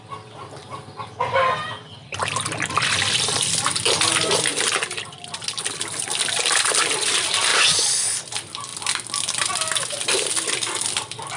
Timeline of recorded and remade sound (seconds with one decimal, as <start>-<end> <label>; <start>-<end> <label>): 0.0-11.4 recorded